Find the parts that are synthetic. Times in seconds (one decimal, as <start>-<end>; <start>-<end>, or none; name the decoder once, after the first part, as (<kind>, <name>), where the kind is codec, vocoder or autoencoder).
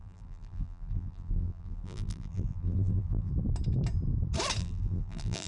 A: 0.0-3.3 (vocoder, BigVGAN v2); 4.6-5.5